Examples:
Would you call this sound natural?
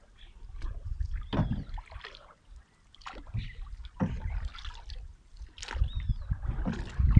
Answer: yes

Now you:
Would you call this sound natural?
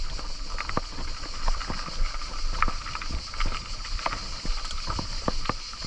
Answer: yes